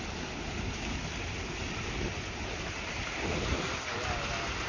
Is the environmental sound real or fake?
real